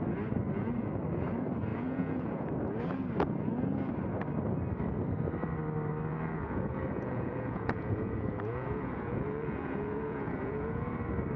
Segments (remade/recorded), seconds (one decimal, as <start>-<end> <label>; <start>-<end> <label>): 0.0-1.7 recorded; 1.7-2.5 remade; 2.5-6.1 recorded; 6.1-10.9 remade; 10.9-11.4 recorded